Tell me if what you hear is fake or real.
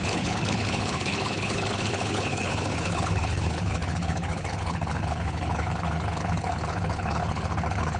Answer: fake